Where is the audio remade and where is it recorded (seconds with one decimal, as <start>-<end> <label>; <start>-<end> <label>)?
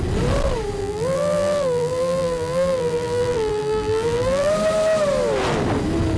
0.0-0.8 recorded; 0.8-4.5 remade; 4.5-6.2 recorded